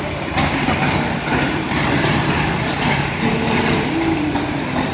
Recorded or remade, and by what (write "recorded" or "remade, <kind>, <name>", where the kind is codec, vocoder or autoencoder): remade, vocoder, BigVGAN v2